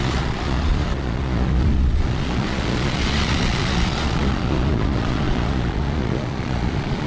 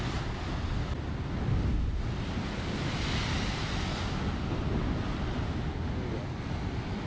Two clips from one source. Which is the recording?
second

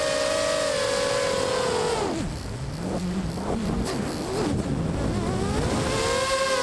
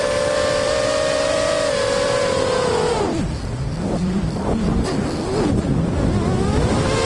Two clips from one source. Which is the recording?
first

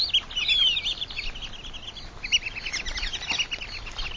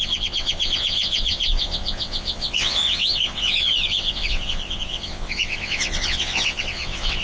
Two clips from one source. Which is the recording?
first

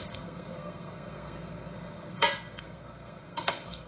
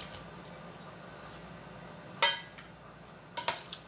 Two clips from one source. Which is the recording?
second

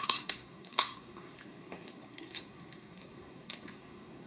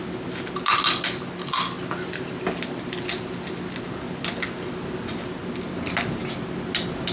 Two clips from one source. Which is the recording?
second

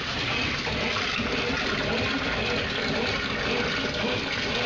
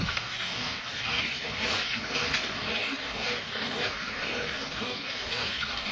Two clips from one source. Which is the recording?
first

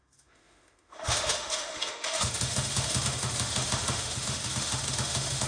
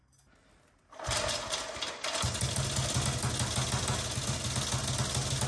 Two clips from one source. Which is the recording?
second